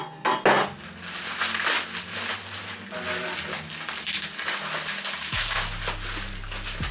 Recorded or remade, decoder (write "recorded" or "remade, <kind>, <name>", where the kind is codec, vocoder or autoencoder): recorded